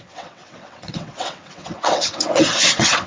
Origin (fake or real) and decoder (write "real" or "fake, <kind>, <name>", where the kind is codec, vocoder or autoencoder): fake, vocoder, WaveNeXt